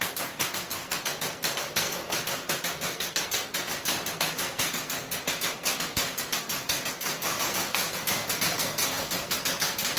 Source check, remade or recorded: remade